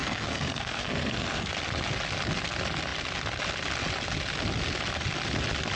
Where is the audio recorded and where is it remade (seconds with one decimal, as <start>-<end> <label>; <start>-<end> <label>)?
0.0-1.5 remade; 1.5-5.8 recorded